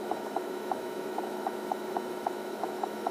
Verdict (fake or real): fake